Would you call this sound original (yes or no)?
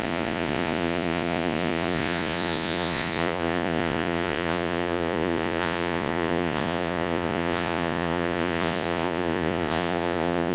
no